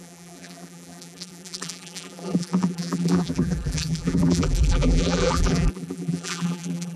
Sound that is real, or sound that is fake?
fake